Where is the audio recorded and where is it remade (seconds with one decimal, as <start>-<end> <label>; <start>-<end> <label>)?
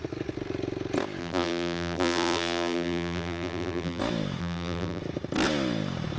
0.0-1.2 recorded; 1.2-4.0 remade; 4.0-4.4 recorded; 4.4-5.0 remade; 5.0-6.2 recorded